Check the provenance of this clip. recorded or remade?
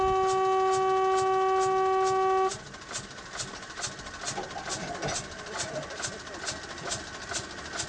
recorded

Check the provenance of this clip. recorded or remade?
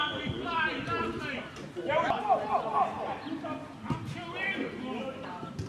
recorded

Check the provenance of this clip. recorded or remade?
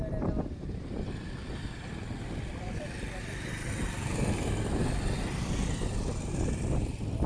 recorded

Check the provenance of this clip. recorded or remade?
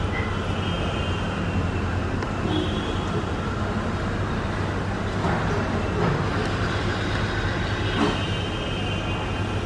recorded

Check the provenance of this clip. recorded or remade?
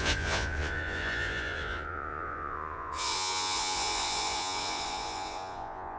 remade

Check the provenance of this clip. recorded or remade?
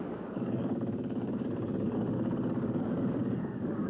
remade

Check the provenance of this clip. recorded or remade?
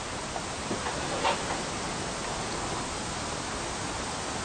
recorded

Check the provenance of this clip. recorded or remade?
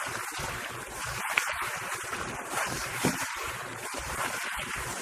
remade